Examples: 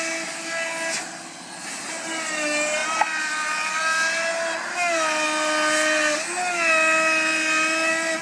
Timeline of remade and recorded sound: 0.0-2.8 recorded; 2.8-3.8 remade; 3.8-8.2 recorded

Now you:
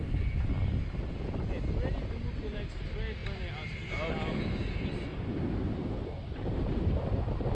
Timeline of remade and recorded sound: 0.0-5.1 recorded; 5.1-6.1 remade; 6.1-7.5 recorded

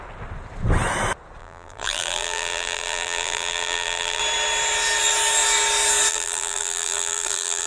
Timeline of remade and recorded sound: 0.0-1.4 recorded; 1.4-4.2 remade; 4.2-6.1 recorded; 6.1-7.7 remade

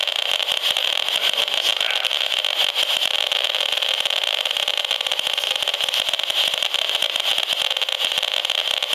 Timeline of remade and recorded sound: 0.0-8.9 recorded